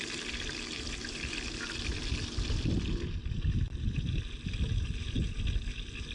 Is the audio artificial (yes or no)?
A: no